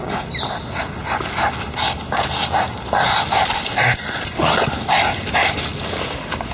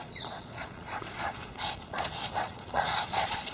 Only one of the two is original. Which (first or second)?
first